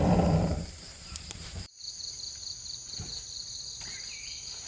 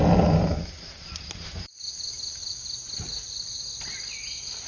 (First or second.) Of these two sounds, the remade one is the first